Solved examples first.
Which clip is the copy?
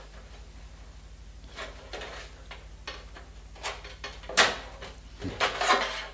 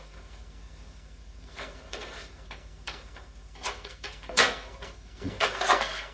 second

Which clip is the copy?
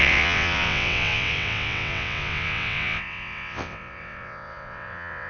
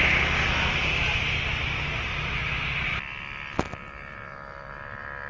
first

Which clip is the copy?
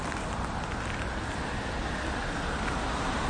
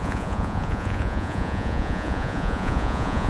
second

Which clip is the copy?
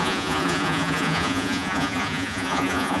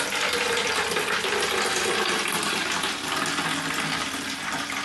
first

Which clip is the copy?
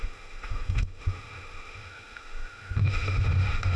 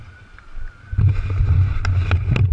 first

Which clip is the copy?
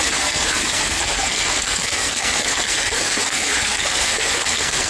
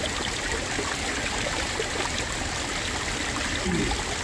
first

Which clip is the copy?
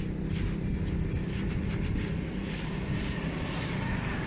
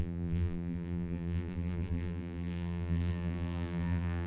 second